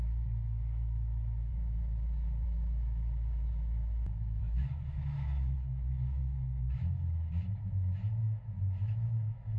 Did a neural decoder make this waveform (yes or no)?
yes